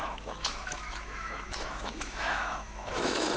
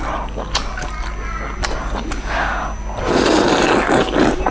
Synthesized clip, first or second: first